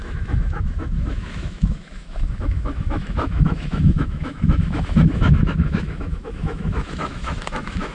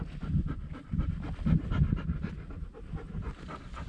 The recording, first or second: second